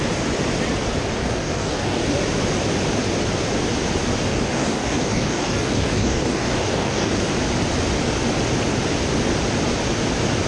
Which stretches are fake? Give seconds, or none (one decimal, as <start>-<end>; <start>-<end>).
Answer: 1.2-2.0; 4.3-7.1